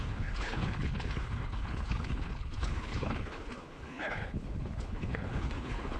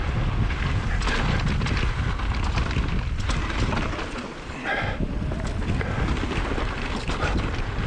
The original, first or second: second